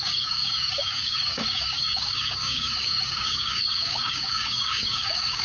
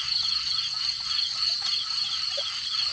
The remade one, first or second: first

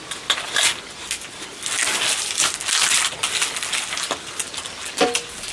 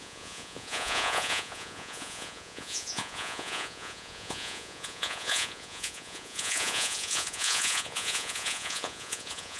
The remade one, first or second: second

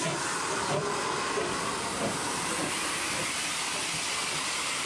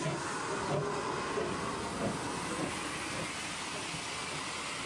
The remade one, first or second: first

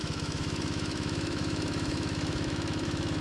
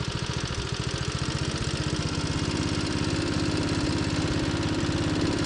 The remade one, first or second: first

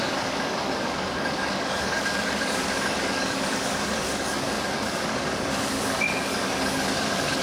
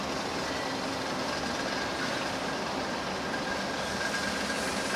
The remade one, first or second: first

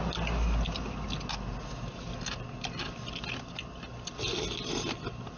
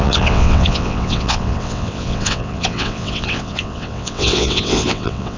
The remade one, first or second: second